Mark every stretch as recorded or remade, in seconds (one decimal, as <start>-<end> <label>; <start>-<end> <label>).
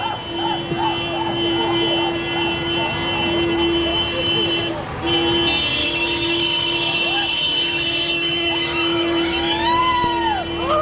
0.0-3.9 recorded; 3.9-4.7 remade; 4.7-5.8 recorded; 5.8-9.8 remade; 9.8-10.8 recorded